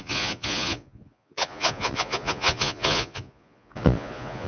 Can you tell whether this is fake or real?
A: fake